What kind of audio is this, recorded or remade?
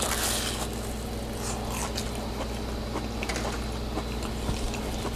recorded